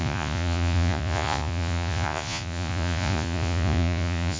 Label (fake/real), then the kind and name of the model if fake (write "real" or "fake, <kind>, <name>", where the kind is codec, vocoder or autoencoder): fake, vocoder, Vocos